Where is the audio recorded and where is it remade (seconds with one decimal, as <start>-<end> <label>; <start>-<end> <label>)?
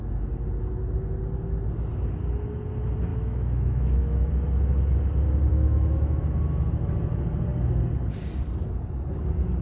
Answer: 0.0-3.1 recorded; 3.1-4.3 remade; 4.3-5.5 recorded; 5.5-6.2 remade; 6.2-9.6 recorded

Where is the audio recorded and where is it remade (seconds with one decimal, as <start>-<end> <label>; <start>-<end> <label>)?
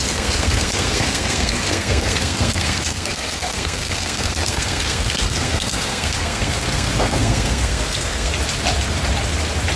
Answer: 0.0-8.3 remade; 8.3-9.8 recorded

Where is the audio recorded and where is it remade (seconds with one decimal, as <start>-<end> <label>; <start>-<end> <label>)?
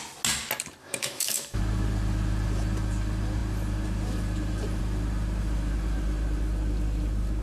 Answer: 0.0-0.8 recorded; 0.8-1.6 remade; 1.6-7.4 recorded